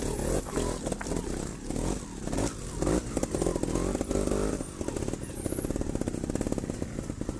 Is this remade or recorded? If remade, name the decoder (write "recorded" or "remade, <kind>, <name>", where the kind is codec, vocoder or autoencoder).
recorded